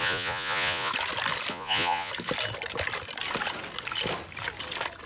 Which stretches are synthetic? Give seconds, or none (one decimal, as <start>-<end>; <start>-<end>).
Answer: 0.0-0.9; 1.5-2.1